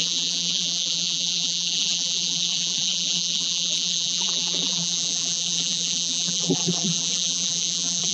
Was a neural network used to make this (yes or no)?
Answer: yes